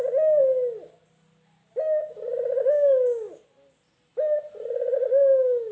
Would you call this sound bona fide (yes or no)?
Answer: yes